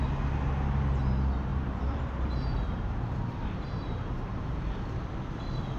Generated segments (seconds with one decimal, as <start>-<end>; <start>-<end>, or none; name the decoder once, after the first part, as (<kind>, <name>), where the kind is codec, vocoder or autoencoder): 1.5-5.0 (vocoder, BigVGAN v2)